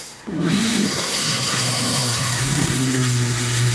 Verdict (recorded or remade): remade